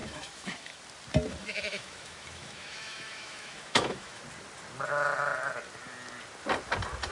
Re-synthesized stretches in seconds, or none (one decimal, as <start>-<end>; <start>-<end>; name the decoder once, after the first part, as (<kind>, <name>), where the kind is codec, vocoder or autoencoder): 0.0-0.8 (autoencoder, DAC-VAE); 1.4-4.2